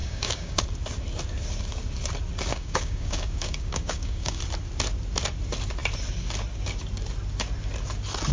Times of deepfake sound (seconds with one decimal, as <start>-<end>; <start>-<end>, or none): 0.0-0.6; 2.5-4.4